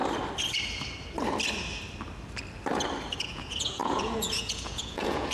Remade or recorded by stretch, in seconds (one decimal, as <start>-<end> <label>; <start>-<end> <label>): 0.0-3.2 recorded; 3.2-5.3 remade